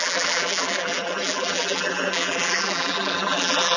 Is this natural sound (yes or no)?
no